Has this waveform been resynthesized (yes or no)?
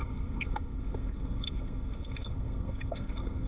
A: yes